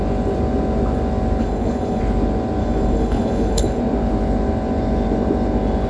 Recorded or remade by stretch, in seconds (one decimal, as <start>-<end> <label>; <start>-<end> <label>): 0.0-1.4 recorded; 1.4-2.0 remade; 2.0-2.6 recorded; 2.6-3.8 remade; 3.8-5.9 recorded